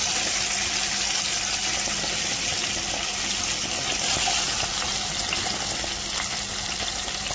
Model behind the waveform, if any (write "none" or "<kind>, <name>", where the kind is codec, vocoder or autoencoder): none